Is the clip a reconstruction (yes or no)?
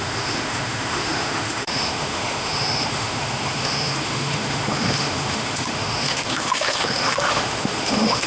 yes